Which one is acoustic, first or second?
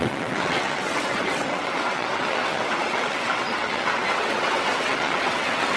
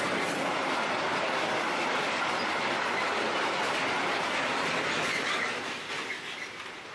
second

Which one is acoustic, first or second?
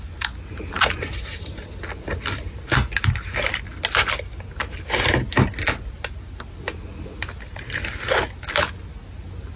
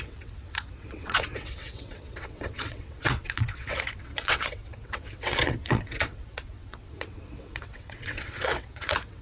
first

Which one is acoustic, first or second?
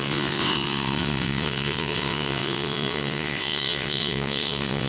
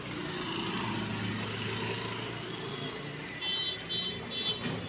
second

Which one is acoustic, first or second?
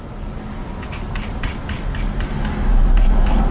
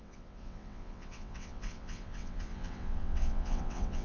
first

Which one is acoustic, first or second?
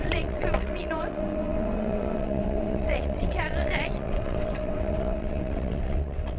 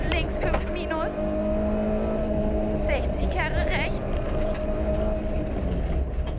second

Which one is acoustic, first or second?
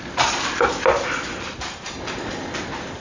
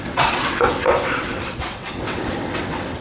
first